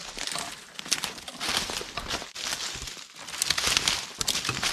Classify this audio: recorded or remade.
recorded